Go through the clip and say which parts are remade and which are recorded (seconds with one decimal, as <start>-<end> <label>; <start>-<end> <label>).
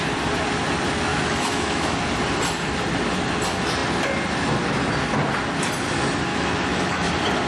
0.0-1.1 recorded; 1.1-2.0 remade; 2.0-6.3 recorded; 6.3-7.1 remade; 7.1-7.5 recorded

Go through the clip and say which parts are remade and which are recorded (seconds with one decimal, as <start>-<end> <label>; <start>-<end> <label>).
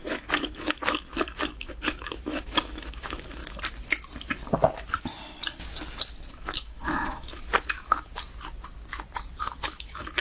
0.0-3.4 remade; 3.4-6.3 recorded; 6.3-8.1 remade; 8.1-9.4 recorded; 9.4-10.2 remade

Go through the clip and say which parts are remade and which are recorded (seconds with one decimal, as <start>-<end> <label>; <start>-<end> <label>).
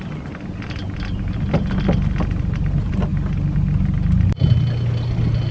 0.0-5.5 recorded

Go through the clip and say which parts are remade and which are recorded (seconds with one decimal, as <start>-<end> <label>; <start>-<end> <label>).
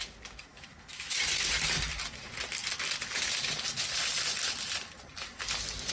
0.0-0.5 recorded; 0.5-1.2 remade; 1.2-5.9 recorded